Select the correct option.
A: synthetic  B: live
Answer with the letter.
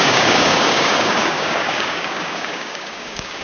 A